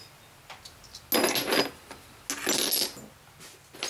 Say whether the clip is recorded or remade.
recorded